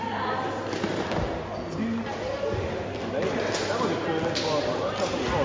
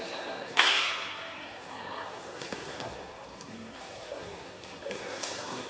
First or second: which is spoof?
second